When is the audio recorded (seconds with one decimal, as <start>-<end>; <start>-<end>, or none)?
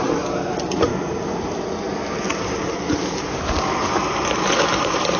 0.0-5.2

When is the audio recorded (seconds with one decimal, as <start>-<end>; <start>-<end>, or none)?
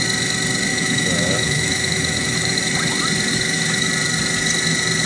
0.0-0.7; 2.6-3.3; 3.9-5.1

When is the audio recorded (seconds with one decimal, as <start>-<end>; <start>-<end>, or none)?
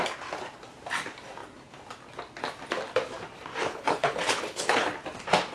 0.0-3.6; 4.9-5.5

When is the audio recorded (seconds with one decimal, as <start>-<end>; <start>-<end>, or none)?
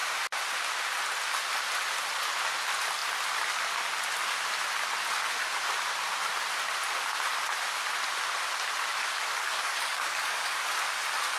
0.0-9.0; 10.6-11.4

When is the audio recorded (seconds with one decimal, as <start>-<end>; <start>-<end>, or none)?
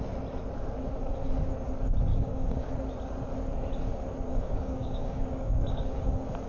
0.0-2.1; 2.7-4.3; 6.1-6.5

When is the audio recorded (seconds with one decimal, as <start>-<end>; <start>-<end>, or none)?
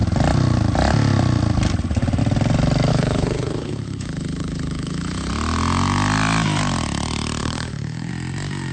0.0-2.9; 5.3-7.4; 8.1-8.7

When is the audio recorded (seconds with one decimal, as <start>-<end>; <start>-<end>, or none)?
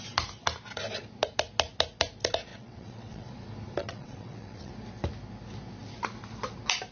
0.0-2.5; 3.3-3.8; 4.7-6.9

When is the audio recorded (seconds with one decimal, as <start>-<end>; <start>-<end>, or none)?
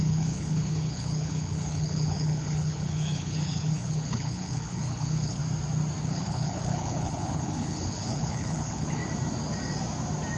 5.4-6.0; 9.0-10.4